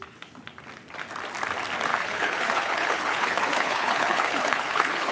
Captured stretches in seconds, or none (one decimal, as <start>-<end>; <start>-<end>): 0.0-1.9